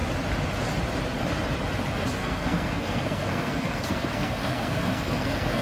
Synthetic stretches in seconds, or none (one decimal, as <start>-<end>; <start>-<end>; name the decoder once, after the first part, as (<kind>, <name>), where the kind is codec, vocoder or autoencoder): 2.2-5.6 (codec, SNAC)